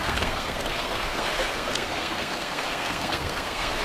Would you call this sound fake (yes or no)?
yes